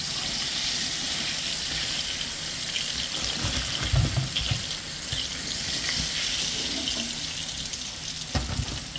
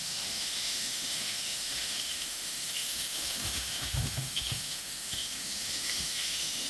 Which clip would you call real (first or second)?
first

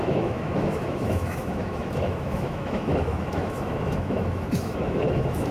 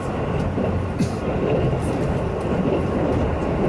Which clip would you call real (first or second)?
second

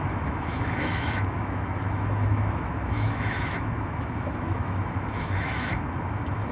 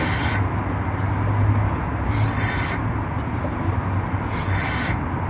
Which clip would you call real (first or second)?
second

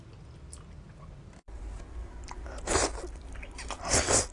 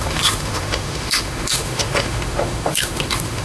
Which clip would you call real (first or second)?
first